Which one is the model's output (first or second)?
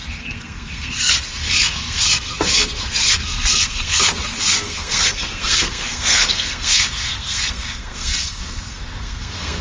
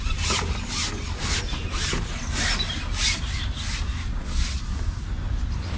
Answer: first